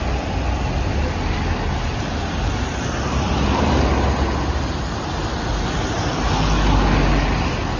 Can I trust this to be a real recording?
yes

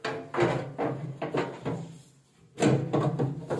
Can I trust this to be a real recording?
yes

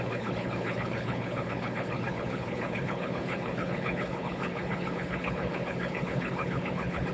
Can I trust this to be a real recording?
no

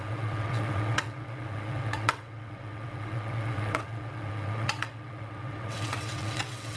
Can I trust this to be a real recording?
no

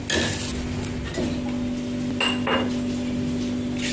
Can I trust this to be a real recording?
yes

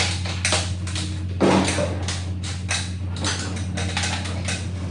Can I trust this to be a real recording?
yes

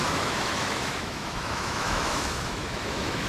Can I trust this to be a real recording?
no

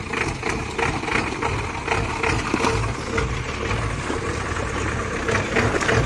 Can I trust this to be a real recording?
yes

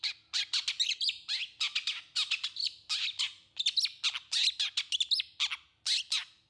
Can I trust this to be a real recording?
yes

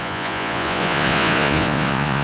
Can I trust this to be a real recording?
no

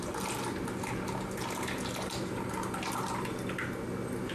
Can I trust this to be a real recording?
yes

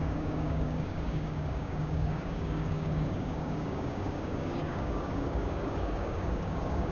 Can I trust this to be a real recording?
no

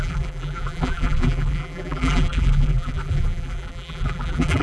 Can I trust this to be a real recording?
no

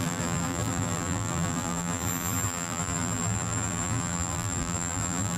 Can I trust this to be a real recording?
no